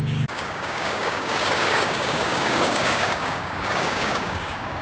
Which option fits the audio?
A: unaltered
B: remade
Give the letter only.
B